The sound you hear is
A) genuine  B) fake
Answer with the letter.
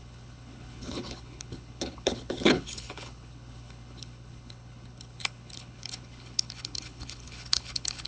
B